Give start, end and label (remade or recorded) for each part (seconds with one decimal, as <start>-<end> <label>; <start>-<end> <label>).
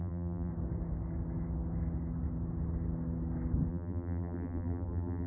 0.0-0.5 remade; 0.5-3.7 recorded; 3.7-5.3 remade